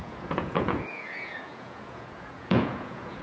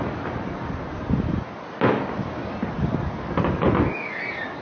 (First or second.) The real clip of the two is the second